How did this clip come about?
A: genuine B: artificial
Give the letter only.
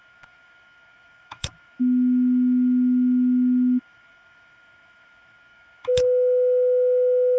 B